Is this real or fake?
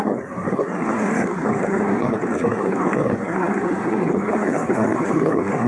fake